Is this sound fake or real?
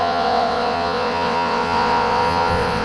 fake